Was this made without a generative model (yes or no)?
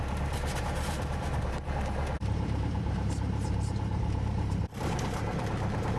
no